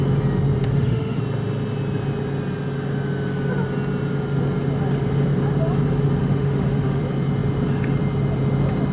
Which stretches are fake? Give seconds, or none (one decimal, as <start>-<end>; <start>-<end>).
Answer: 0.6-1.2; 6.2-7.0